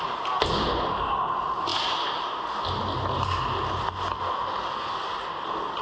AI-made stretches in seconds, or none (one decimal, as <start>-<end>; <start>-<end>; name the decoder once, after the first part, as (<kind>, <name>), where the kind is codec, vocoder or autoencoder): none